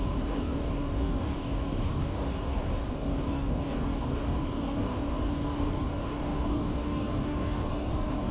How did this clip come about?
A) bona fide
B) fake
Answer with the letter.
B